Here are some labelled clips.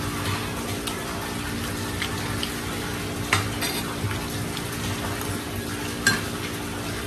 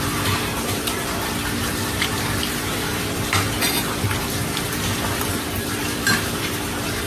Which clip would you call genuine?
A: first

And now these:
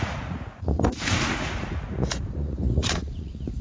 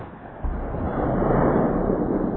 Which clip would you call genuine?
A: second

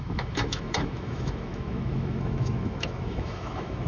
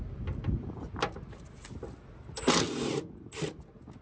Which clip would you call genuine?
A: second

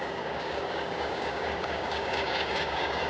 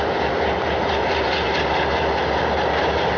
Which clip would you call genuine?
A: second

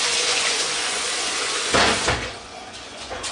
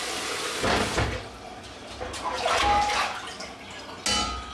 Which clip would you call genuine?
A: second